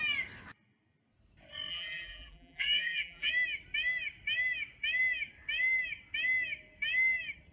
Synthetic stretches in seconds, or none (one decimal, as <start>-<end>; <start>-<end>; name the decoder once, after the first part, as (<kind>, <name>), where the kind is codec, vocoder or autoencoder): 1.7-3.3 (vocoder, BigVGAN v2)